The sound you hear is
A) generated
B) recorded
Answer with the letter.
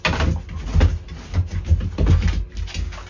B